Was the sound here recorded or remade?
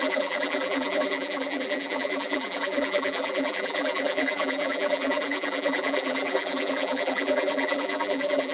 remade